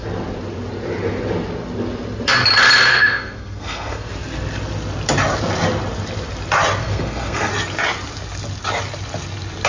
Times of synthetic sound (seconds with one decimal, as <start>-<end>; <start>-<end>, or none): 2.9-4.1; 6.8-7.5